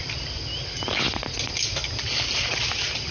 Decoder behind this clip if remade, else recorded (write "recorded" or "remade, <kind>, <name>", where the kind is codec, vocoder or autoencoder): recorded